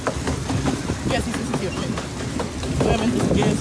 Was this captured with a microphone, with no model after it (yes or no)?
yes